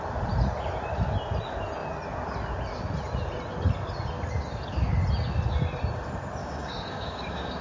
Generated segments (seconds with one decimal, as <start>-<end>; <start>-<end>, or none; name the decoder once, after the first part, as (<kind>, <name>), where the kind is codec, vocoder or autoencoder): 6.4-7.6 (codec, DAC)